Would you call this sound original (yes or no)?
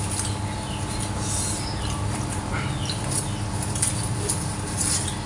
yes